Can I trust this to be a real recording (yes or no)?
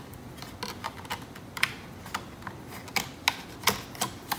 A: yes